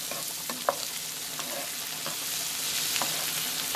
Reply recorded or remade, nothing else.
recorded